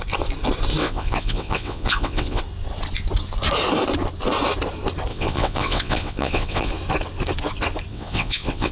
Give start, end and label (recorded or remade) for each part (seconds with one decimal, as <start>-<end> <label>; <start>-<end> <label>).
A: 0.0-0.8 recorded; 0.8-2.4 remade; 2.4-5.1 recorded; 5.1-6.7 remade; 6.7-7.9 recorded; 7.9-8.7 remade